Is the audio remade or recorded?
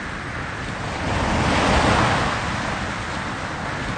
recorded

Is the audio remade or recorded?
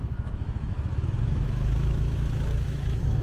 remade